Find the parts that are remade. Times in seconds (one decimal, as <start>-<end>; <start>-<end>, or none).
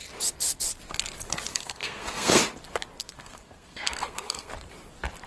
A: 1.5-2.4; 3.0-4.5